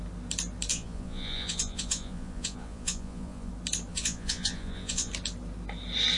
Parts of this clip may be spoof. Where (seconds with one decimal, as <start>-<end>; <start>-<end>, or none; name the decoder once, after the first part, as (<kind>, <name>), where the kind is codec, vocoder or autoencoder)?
0.7-3.5 (vocoder, Vocos); 3.9-5.1